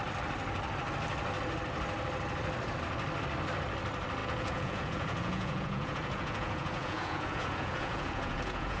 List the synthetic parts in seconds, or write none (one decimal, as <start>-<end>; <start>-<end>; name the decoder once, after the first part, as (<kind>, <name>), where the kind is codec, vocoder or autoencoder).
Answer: 4.2-8.8 (vocoder, Vocos)